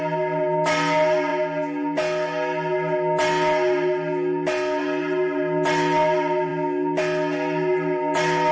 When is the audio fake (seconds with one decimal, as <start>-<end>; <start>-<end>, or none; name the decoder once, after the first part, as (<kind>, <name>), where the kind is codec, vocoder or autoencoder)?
none